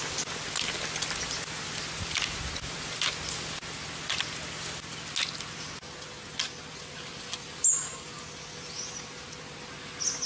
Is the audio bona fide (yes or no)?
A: yes